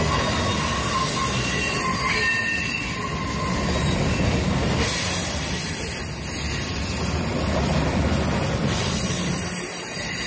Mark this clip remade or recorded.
recorded